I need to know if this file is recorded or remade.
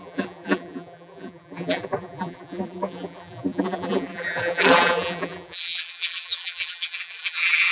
remade